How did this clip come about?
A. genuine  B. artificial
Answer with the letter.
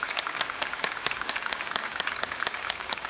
B